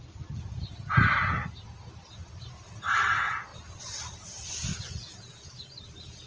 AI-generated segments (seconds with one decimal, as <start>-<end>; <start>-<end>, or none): 4.7-5.7